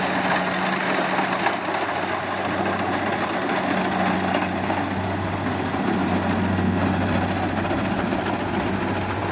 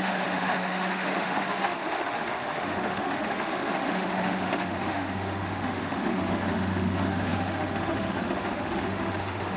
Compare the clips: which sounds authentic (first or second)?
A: first